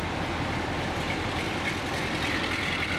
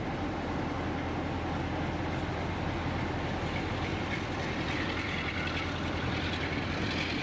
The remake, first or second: first